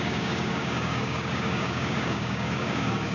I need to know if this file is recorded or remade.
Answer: remade